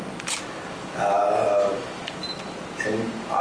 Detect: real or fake real